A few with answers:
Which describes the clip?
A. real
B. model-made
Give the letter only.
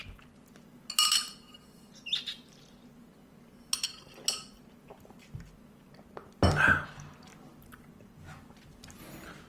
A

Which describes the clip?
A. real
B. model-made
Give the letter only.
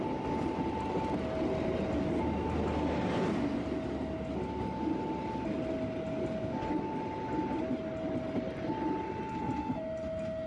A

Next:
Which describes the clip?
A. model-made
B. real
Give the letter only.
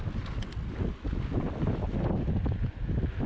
B